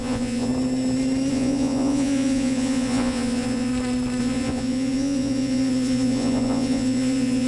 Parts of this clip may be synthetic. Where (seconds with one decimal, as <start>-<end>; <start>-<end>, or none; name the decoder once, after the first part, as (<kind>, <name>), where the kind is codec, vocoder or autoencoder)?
0.0-0.5 (vocoder, Vocos); 1.3-3.7; 4.2-7.5

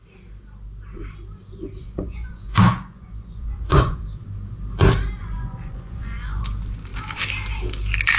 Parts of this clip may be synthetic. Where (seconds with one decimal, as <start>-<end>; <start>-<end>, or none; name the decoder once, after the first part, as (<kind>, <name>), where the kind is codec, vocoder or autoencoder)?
1.8-4.0 (vocoder, Vocos); 5.2-6.4

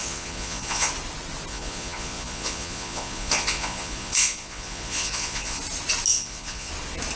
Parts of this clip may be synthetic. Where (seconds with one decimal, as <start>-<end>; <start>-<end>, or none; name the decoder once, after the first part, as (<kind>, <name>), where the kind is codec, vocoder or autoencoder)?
0.0-0.9 (vocoder, Vocos); 1.5-5.6; 6.1-6.7

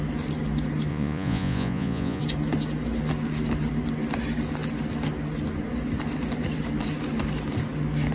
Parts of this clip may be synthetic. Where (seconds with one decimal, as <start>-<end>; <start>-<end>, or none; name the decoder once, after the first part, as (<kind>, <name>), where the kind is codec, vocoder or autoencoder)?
0.9-2.2 (vocoder, Vocos)

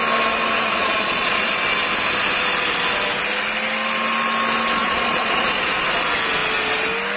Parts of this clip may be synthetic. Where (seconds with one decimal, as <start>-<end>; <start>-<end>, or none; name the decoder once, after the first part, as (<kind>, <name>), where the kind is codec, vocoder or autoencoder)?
0.7-1.5 (vocoder, Vocos); 4.8-5.7

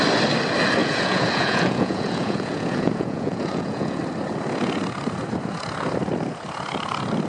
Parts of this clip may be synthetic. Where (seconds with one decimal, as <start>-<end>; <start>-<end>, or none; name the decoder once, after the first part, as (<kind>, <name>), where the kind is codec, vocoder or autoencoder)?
0.8-4.0 (vocoder, Vocos)

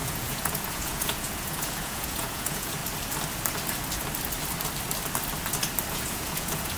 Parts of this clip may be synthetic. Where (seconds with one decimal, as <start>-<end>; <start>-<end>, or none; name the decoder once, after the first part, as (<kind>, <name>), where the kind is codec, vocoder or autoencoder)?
0.0-2.8 (vocoder, Vocos); 5.9-6.8

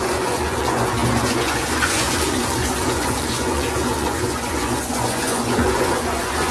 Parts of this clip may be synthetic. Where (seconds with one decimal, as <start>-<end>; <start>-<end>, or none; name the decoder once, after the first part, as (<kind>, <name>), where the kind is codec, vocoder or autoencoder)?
0.0-6.5 (vocoder, Vocos)